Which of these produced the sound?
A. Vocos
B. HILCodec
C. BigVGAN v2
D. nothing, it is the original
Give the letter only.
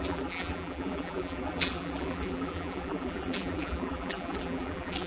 C